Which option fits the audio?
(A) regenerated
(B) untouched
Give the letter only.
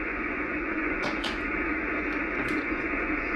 A